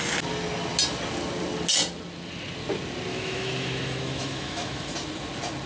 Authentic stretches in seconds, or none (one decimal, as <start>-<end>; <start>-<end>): 0.0-3.1; 4.9-5.7